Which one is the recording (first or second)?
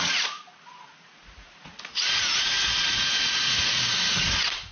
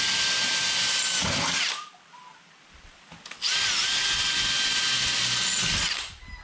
second